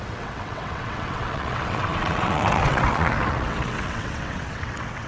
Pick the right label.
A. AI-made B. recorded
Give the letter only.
A